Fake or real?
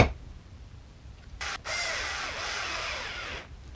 real